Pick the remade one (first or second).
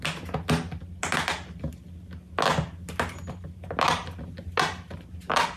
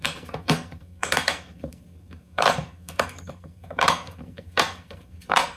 second